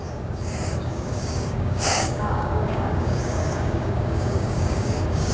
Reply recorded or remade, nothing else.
remade